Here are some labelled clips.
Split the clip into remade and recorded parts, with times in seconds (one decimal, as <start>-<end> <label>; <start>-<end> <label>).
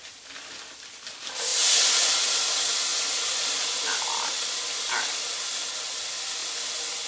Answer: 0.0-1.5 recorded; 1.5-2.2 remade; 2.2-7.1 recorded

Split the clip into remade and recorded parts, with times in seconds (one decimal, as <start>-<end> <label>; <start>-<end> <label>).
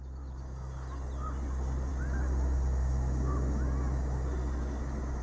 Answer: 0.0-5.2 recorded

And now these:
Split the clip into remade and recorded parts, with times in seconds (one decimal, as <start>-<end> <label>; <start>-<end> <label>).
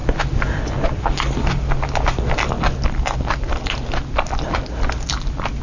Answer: 0.0-5.6 recorded